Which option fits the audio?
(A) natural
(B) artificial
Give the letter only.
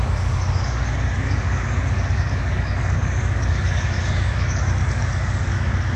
B